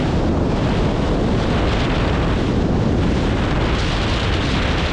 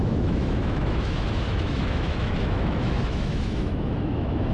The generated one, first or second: second